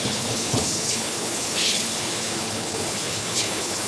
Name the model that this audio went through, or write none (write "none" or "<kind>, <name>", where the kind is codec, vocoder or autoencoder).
codec, HILCodec